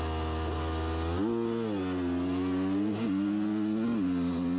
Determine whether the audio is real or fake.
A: real